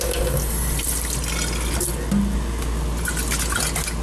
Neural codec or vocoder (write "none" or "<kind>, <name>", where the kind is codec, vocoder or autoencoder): none